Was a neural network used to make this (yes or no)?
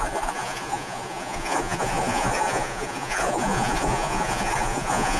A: yes